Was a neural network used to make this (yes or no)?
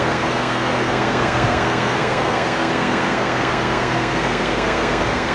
yes